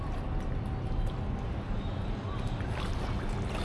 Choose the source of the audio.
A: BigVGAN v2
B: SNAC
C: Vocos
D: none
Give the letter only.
D